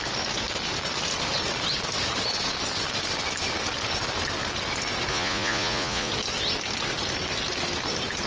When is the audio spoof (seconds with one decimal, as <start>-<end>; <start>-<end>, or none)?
5.1-6.1